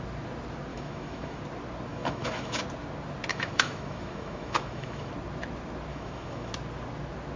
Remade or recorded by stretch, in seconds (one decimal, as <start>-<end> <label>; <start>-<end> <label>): 0.0-0.7 recorded; 0.7-1.4 remade; 1.4-1.9 recorded; 1.9-2.6 remade; 2.6-3.3 recorded; 3.3-5.1 remade; 5.1-5.9 recorded; 5.9-6.5 remade; 6.5-7.4 recorded